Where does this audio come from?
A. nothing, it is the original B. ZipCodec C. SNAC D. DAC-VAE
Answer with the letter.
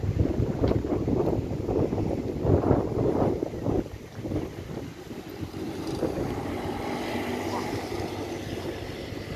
A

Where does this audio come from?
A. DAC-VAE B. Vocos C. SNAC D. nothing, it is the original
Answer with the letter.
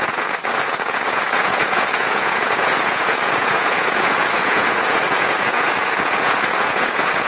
B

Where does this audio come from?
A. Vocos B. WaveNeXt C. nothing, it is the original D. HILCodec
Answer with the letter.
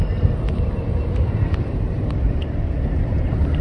C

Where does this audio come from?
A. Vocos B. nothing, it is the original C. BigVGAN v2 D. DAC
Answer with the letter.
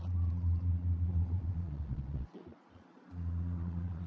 A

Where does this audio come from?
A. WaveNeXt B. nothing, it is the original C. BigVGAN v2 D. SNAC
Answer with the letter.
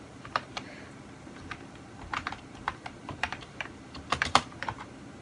C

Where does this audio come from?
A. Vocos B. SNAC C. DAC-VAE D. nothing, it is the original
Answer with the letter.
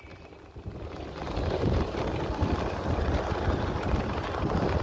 D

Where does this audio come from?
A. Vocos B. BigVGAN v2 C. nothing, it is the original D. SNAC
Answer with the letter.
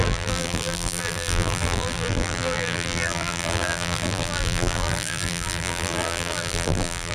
B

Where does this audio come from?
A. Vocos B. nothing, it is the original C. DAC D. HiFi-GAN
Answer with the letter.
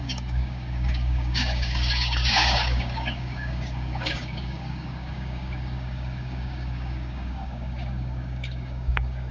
C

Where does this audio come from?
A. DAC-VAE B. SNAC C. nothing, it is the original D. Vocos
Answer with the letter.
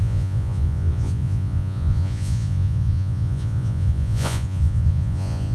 D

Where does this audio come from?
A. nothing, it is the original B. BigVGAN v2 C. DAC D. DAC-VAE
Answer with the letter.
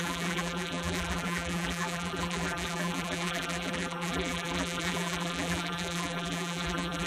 B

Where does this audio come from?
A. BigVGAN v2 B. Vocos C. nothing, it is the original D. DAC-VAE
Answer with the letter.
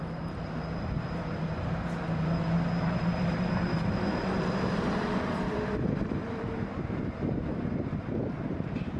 A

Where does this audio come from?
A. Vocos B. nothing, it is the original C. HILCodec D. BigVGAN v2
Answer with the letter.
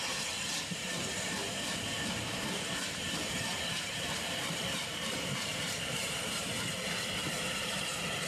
D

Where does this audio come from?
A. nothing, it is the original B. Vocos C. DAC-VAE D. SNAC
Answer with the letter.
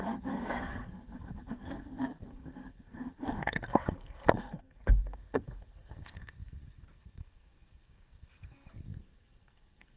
D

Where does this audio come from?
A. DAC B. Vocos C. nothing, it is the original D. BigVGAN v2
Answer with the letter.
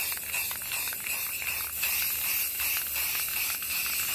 C